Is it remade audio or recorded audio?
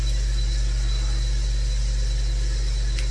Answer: recorded